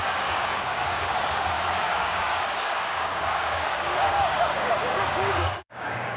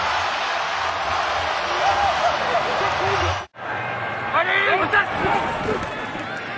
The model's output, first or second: first